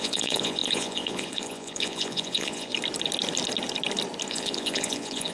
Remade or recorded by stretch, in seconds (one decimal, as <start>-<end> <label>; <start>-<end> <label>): 0.0-2.7 remade; 2.7-4.3 recorded; 4.3-5.3 remade